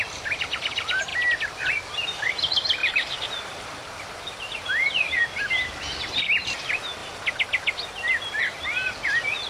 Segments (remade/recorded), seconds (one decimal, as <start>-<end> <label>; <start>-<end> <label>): 0.0-1.1 recorded; 1.1-2.3 remade; 2.3-2.8 recorded; 2.8-5.2 remade; 5.2-9.5 recorded